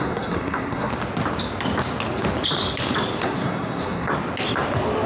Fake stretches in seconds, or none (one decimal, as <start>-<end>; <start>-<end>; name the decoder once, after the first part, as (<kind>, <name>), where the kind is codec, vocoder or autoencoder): 0.0-0.9 (codec, SNAC); 3.2-4.1